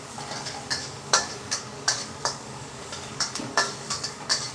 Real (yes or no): no